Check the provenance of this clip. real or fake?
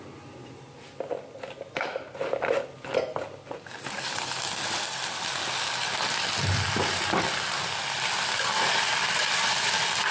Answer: real